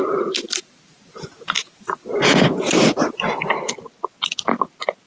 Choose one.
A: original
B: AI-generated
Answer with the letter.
A